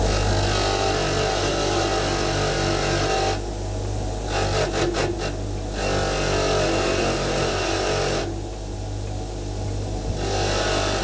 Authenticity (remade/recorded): recorded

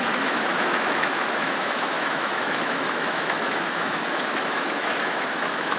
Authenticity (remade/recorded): remade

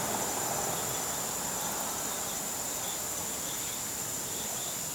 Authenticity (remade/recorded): recorded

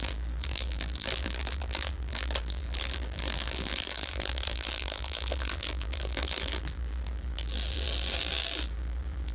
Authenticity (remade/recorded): remade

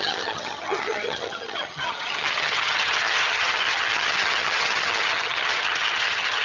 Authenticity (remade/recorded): remade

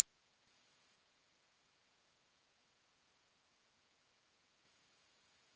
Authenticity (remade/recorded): remade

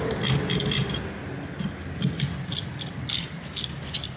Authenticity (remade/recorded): recorded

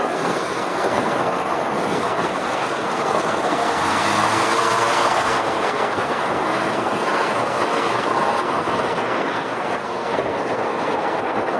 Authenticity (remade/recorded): remade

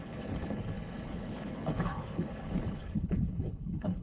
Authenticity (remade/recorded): remade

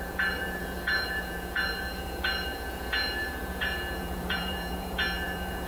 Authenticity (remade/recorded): remade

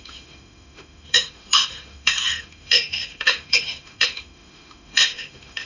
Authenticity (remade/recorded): remade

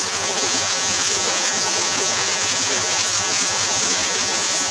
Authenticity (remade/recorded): remade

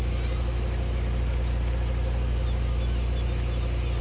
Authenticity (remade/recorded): recorded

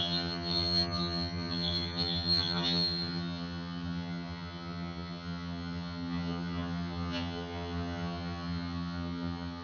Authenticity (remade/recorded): remade